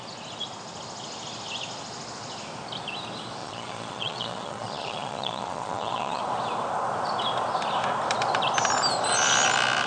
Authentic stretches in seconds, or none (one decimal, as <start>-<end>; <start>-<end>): 0.0-3.4; 6.2-9.9